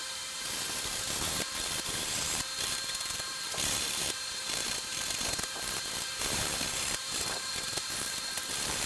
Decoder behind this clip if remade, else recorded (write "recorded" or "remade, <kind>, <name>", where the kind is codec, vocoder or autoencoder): remade, vocoder, BigVGAN v2